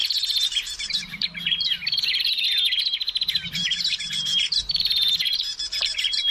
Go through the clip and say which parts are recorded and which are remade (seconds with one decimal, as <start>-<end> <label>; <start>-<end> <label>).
0.0-1.8 remade; 1.8-3.2 recorded; 3.2-6.3 remade

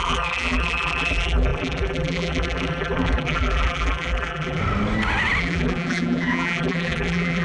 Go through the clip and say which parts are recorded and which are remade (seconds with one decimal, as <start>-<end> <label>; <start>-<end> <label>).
0.0-4.6 remade; 4.6-5.4 recorded; 5.4-7.4 remade

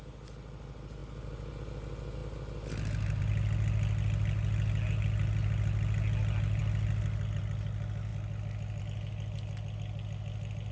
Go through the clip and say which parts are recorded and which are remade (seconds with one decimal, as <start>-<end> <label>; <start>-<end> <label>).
0.0-10.7 recorded